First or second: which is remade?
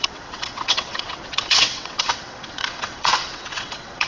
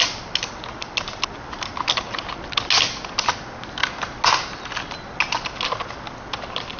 first